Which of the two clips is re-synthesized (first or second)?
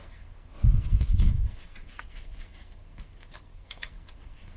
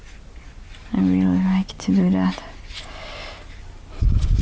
first